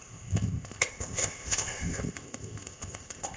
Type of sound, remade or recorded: remade